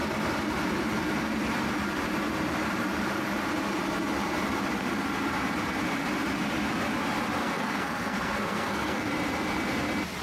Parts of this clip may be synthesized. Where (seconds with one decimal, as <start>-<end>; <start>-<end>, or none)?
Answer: 7.4-9.1